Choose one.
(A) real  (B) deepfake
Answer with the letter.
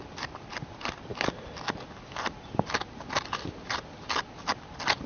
A